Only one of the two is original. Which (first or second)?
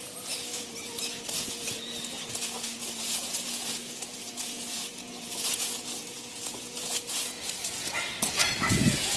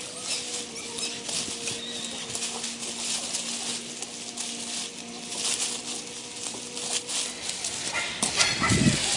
second